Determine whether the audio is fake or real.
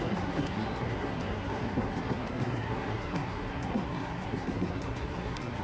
fake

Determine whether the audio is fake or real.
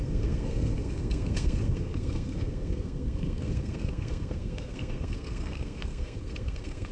fake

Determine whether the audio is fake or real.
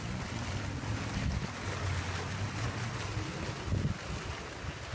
real